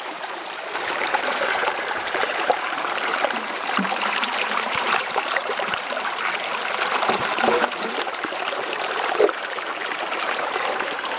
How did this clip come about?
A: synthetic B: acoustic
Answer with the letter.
A